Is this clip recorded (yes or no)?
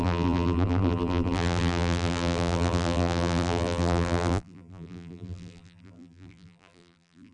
no